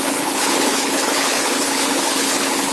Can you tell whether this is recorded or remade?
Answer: remade